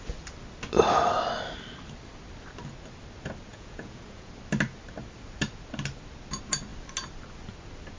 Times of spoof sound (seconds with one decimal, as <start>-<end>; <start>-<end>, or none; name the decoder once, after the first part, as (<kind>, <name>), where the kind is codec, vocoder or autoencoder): 3.5-4.3 (vocoder, Vocos)